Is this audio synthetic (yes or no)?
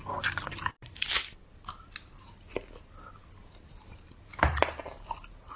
no